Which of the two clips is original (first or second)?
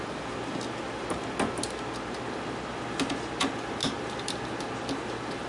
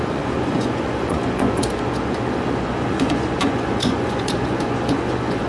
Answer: first